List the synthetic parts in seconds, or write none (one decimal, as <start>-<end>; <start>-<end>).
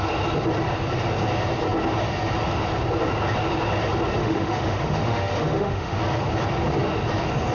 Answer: 4.2-6.0